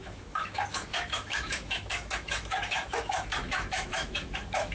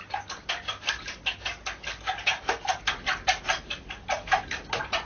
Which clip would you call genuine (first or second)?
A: second